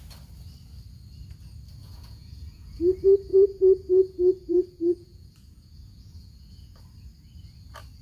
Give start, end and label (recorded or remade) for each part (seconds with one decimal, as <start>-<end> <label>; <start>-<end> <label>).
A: 0.0-1.8 recorded; 1.8-2.8 remade; 2.8-3.3 recorded; 3.3-6.8 remade; 6.8-8.0 recorded